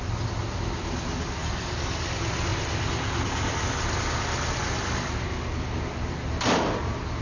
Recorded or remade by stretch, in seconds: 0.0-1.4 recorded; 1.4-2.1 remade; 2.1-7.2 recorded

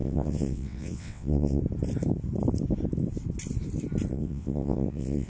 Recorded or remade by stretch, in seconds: 0.0-1.6 remade; 1.6-4.1 recorded; 4.1-5.3 remade

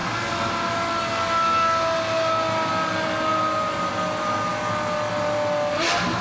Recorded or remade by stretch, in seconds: 0.0-6.2 recorded

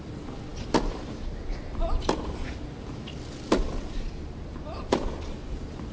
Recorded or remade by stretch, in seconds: 0.0-5.9 recorded

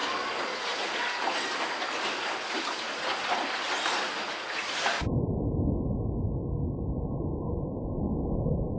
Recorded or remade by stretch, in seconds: 0.0-8.8 recorded

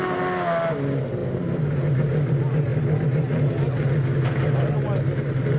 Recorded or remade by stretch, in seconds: 0.0-1.2 recorded; 1.2-2.3 remade; 2.3-2.7 recorded; 2.7-3.5 remade; 3.5-5.6 recorded

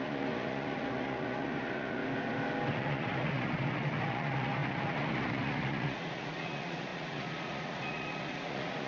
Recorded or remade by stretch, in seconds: 0.0-2.0 remade; 2.0-2.7 recorded; 2.7-8.9 remade

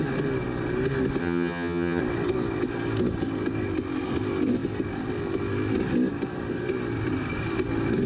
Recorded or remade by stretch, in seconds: 0.0-1.2 recorded; 1.2-2.0 remade; 2.0-8.1 recorded